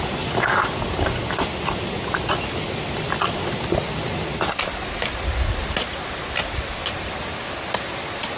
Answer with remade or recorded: recorded